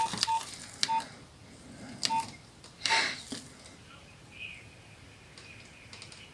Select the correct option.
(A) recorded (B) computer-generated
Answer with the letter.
A